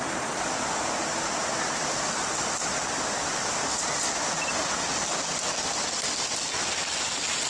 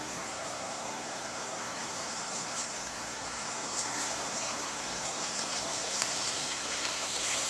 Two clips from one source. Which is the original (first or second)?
first